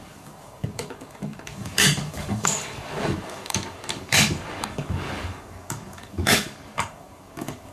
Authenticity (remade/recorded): remade